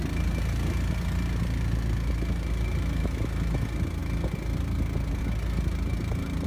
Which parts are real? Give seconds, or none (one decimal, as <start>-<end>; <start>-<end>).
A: 0.0-6.5